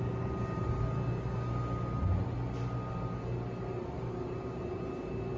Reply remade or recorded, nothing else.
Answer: recorded